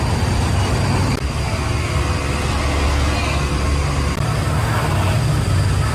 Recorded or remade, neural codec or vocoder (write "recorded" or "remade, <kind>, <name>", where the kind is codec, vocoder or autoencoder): recorded